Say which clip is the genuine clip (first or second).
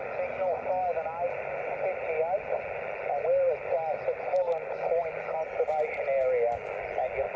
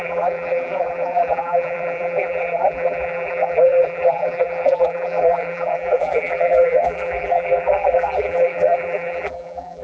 first